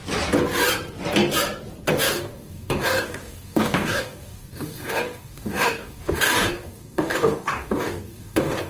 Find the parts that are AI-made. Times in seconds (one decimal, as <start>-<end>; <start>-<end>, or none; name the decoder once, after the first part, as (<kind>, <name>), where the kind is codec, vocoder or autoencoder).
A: 1.9-8.7 (codec, DAC)